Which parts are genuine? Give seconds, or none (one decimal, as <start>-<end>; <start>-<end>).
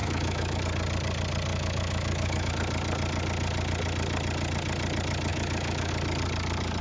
0.6-1.5; 2.5-5.3; 5.9-6.8